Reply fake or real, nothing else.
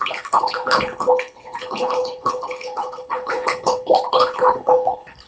fake